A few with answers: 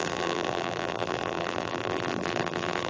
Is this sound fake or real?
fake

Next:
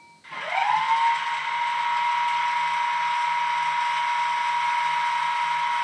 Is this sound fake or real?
real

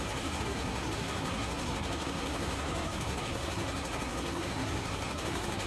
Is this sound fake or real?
fake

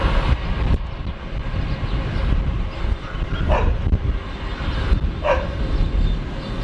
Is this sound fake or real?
real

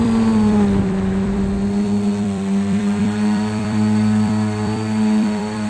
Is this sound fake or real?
fake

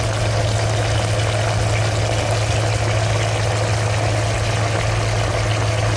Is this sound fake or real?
real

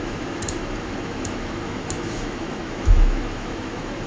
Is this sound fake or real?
fake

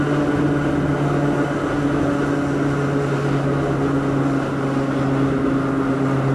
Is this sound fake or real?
real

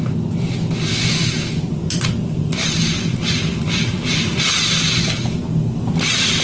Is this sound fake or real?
real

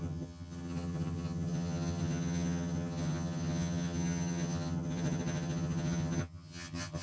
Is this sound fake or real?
fake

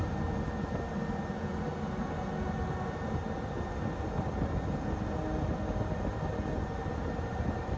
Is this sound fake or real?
real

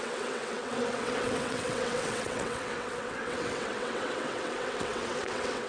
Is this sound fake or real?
fake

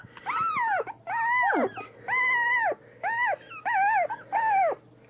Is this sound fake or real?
real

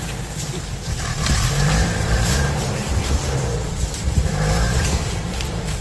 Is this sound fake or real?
fake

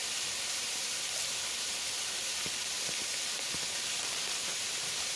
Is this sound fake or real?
real